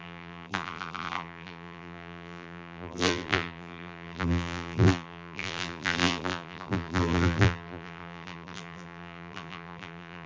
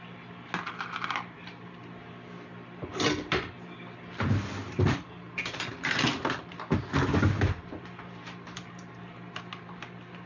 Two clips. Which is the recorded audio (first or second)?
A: second